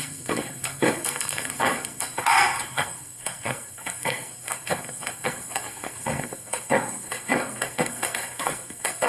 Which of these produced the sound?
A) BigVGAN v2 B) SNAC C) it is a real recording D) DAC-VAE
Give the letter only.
B